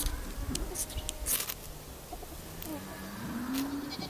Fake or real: real